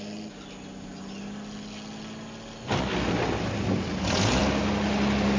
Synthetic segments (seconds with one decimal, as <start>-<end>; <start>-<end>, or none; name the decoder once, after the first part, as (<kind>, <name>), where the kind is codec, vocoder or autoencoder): none